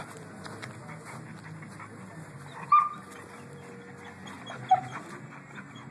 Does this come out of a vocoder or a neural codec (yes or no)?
no